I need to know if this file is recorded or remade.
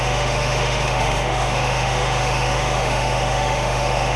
remade